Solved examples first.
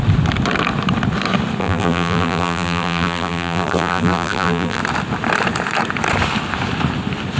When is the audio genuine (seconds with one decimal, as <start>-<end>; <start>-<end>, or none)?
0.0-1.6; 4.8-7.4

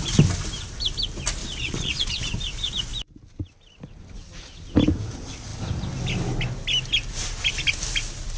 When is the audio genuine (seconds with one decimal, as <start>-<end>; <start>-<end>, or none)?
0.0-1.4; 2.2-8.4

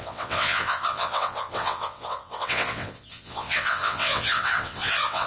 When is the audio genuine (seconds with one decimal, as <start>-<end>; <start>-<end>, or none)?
none

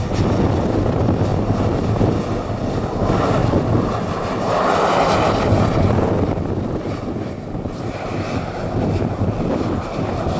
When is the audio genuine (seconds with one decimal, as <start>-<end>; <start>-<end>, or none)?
0.0-10.4

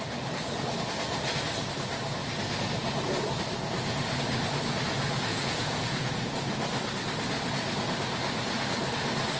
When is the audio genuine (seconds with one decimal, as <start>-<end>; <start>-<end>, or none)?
0.0-5.3; 6.1-9.4